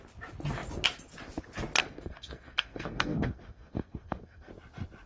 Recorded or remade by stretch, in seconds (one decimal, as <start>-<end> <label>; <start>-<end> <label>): 0.0-1.8 recorded; 1.8-4.5 remade; 4.5-5.1 recorded